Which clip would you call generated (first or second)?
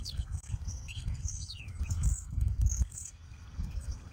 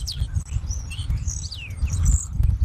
first